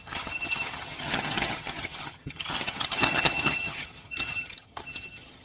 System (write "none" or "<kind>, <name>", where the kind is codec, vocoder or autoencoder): vocoder, HiFi-GAN